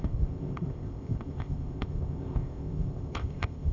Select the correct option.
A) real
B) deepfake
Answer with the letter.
B